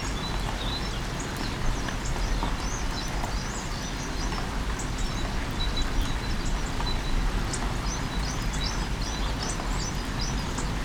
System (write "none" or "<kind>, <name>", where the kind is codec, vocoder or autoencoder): none